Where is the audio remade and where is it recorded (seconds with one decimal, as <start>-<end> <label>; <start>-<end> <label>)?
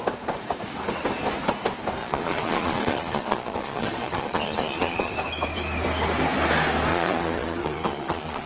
0.0-2.0 recorded; 2.0-5.1 remade; 5.1-6.9 recorded; 6.9-8.5 remade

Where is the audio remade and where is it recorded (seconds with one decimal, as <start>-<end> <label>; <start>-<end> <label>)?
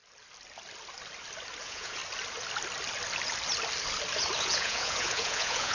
0.0-1.6 recorded; 1.6-2.0 remade; 2.0-4.4 recorded; 4.4-5.7 remade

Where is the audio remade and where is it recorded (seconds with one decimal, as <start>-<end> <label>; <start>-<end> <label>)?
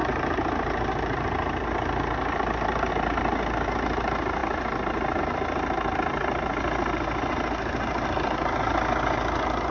0.0-9.7 recorded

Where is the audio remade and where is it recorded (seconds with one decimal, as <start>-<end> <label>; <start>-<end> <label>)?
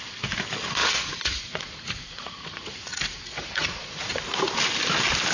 0.0-0.8 recorded; 0.8-4.0 remade; 4.0-5.3 recorded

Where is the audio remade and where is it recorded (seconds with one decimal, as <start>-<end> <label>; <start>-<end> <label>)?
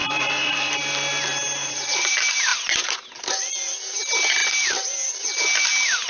0.0-0.7 remade; 0.7-1.6 recorded; 1.6-2.1 remade; 2.1-6.1 recorded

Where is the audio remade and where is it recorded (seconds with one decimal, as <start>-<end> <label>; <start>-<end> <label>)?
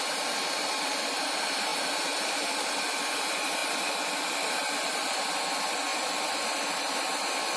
0.0-7.6 recorded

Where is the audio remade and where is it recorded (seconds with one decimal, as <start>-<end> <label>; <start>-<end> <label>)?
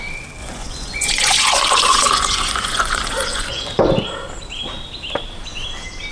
0.0-0.4 recorded; 0.4-3.8 remade; 3.8-6.1 recorded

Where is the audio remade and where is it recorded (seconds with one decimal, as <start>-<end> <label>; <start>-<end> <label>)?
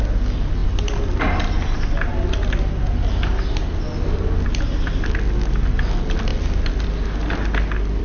0.0-8.0 recorded